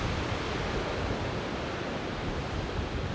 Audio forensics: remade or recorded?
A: recorded